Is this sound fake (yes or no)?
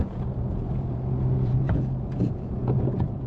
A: yes